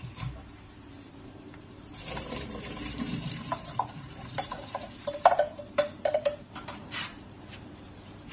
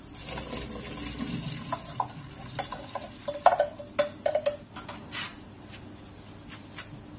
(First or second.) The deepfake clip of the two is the first